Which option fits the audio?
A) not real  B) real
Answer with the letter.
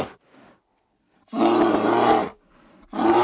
B